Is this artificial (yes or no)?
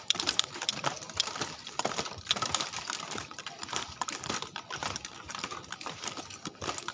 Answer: yes